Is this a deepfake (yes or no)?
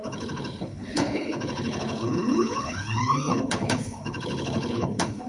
yes